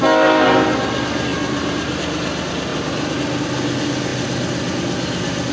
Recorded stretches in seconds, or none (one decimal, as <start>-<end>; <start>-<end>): 0.0-1.3; 2.0-2.7; 3.2-5.5